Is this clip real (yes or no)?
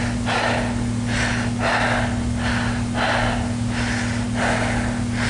yes